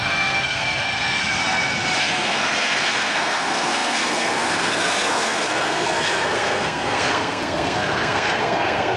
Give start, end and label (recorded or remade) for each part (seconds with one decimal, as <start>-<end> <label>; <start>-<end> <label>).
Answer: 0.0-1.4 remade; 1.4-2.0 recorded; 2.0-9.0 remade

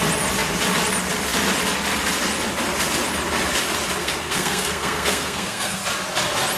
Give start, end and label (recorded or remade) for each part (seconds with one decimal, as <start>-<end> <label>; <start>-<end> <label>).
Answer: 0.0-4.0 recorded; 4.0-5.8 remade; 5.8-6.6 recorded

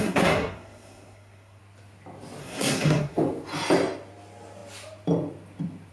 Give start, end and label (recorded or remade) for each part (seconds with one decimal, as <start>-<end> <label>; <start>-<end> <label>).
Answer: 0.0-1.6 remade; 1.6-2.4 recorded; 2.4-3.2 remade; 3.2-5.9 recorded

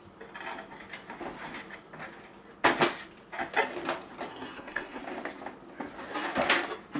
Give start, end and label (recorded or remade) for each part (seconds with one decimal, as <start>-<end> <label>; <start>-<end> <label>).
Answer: 0.0-4.3 recorded; 4.3-5.0 remade; 5.0-7.0 recorded

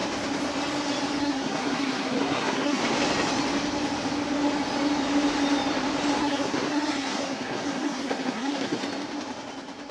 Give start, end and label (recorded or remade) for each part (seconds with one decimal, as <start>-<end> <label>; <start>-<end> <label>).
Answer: 0.0-1.2 recorded; 1.2-2.8 remade; 2.8-6.2 recorded; 6.2-8.8 remade; 8.8-9.9 recorded